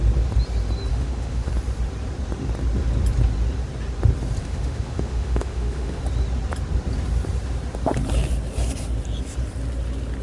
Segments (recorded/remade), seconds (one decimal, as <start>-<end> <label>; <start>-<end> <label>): 0.0-0.9 recorded; 0.9-1.5 remade; 1.5-4.4 recorded; 4.4-6.0 remade; 6.0-10.2 recorded